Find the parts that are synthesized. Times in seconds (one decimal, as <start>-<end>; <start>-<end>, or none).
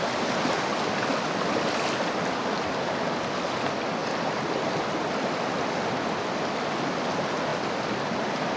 none